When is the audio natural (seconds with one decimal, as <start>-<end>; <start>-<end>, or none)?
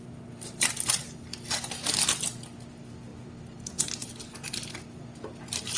0.0-5.8